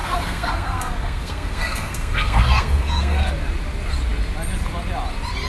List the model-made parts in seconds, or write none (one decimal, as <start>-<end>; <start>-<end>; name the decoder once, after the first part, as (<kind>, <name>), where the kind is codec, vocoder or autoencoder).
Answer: 0.0-3.3 (codec, SNAC)

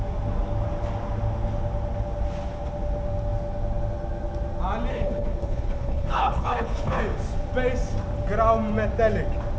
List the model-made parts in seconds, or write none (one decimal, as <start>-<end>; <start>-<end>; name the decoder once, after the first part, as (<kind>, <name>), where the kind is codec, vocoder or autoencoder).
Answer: 4.9-7.0 (codec, HILCodec)

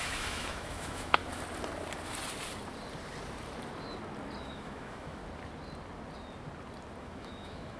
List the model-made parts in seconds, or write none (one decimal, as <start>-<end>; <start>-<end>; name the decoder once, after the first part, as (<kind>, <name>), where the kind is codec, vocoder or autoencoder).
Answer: 0.0-1.2 (autoencoder, DAC-VAE); 4.4-5.2; 7.0-7.8

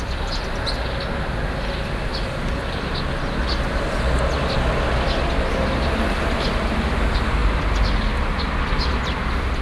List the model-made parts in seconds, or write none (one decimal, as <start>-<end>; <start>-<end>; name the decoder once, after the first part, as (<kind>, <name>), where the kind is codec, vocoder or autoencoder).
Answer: none

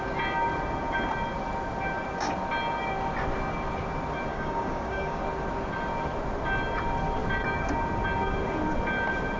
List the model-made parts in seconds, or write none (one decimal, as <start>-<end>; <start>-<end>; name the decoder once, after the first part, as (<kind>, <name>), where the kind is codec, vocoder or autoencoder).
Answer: 4.3-5.2 (codec, DAC)

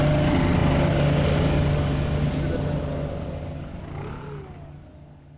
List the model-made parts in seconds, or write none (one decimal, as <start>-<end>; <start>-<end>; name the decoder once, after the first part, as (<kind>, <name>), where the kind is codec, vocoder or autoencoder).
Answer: none